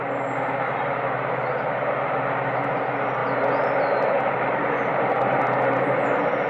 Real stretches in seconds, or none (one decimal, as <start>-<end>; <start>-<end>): 0.0-6.5